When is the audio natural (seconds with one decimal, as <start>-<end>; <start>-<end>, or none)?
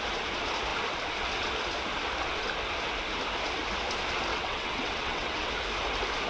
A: 0.0-4.3; 5.5-6.3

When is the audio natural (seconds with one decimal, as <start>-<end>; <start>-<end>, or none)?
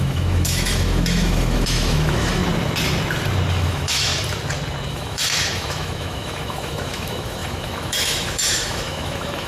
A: 2.4-3.5; 4.1-4.9